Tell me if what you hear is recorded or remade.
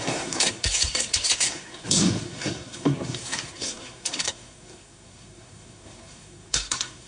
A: remade